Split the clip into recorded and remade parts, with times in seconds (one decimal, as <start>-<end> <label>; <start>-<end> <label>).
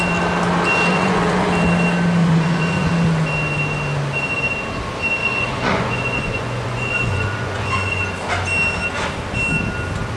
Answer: 0.0-0.9 recorded; 0.9-1.5 remade; 1.5-2.2 recorded; 2.2-2.9 remade; 2.9-5.2 recorded; 5.2-8.1 remade; 8.1-10.2 recorded